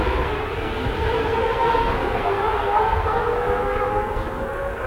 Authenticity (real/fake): fake